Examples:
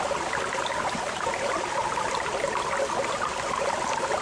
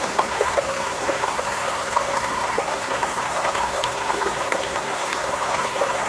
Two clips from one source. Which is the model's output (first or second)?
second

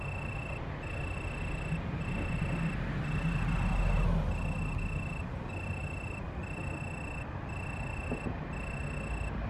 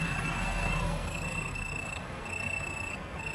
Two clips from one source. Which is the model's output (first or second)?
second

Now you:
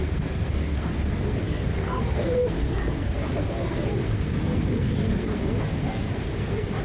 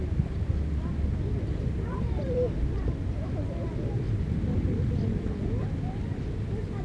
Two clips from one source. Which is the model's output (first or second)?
first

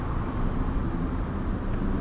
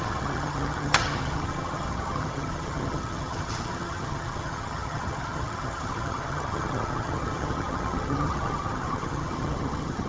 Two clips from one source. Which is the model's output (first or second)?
second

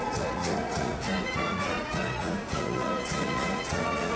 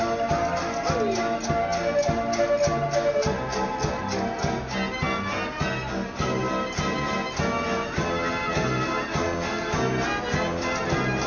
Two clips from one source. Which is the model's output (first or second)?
first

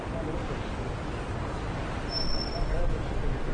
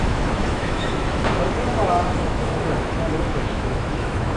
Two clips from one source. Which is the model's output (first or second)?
second